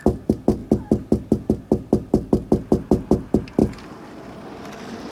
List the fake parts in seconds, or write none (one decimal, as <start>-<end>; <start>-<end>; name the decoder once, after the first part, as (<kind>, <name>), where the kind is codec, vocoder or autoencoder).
none